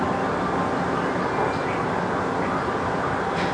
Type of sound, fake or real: real